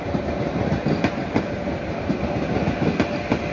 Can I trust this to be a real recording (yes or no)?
yes